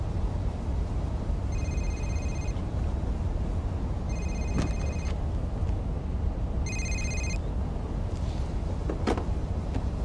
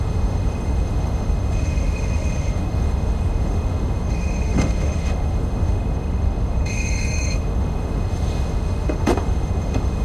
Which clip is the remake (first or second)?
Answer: second